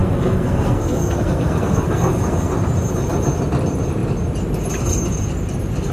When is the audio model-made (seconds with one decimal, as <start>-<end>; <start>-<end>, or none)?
0.0-2.5